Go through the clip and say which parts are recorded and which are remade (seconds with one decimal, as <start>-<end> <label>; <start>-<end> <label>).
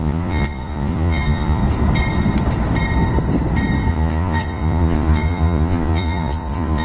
0.0-1.6 remade; 1.6-3.9 recorded; 3.9-6.8 remade